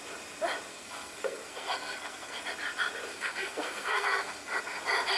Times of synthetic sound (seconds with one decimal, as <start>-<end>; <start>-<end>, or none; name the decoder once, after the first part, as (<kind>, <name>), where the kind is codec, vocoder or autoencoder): 0.7-2.4 (codec, SNAC); 3.1-4.6